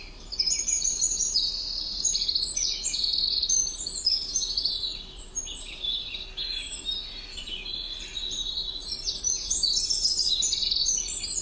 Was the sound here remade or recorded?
remade